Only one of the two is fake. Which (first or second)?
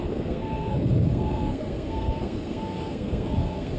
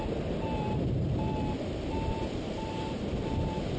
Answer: first